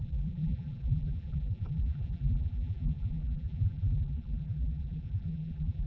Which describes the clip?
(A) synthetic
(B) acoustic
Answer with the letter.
A